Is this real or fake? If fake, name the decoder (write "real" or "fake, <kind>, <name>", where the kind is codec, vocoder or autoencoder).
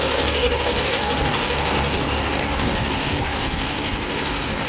fake, codec, DAC